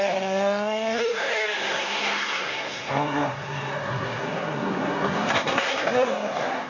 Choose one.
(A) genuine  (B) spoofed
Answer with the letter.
B